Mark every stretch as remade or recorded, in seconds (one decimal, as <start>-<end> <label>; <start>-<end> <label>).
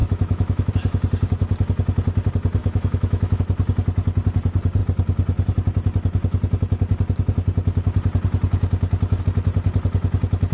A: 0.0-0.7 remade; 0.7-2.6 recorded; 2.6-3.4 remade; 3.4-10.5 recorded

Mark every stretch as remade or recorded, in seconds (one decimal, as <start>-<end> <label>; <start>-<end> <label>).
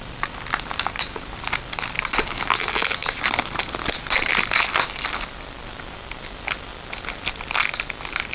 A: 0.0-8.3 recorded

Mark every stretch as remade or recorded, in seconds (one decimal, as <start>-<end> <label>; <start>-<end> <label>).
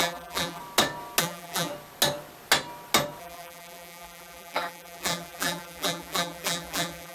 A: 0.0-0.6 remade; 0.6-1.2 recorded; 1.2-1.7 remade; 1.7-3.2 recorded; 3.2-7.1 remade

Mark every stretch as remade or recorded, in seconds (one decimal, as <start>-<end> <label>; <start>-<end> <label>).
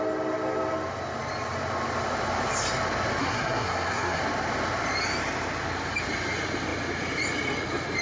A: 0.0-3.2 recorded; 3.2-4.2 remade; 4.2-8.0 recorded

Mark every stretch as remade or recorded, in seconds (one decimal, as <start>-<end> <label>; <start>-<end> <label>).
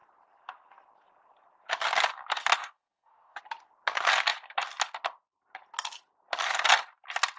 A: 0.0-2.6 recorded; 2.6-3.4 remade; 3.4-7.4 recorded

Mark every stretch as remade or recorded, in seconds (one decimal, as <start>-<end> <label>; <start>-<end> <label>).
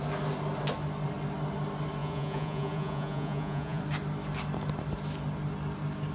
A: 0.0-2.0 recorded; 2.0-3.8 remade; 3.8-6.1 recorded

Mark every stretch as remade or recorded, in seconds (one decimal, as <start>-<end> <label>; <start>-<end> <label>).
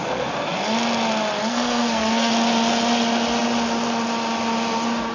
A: 0.0-1.5 recorded; 1.5-2.3 remade; 2.3-5.1 recorded